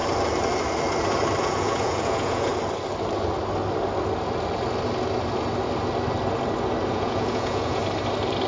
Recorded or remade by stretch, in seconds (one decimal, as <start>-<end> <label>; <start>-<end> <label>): 0.0-1.4 recorded; 1.4-2.5 remade; 2.5-6.9 recorded; 6.9-7.8 remade; 7.8-8.5 recorded

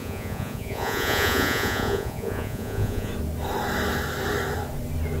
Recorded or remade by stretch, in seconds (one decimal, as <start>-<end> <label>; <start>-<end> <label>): 0.0-3.1 remade; 3.1-5.2 recorded

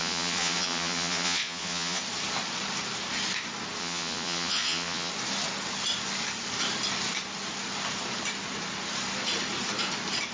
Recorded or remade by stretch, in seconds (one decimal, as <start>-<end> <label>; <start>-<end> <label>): 0.0-2.0 remade; 2.0-3.8 recorded; 3.8-5.1 remade; 5.1-10.3 recorded

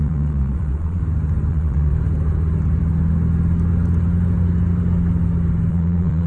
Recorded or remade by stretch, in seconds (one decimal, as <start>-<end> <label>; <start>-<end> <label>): 0.0-1.0 remade; 1.0-1.5 recorded; 1.5-1.9 remade; 1.9-5.7 recorded; 5.7-6.3 remade

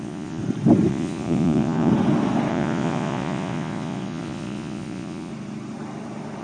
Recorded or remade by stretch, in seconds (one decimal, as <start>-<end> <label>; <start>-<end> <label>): 0.0-0.4 remade; 0.4-0.9 recorded; 0.9-1.9 remade; 1.9-2.5 recorded; 2.5-5.3 remade; 5.3-6.4 recorded

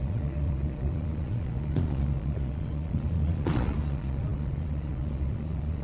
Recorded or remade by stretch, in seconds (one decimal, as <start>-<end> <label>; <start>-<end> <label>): 0.0-5.8 remade